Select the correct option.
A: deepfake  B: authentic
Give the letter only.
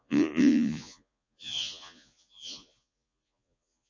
A